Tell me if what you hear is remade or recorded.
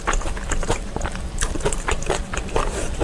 remade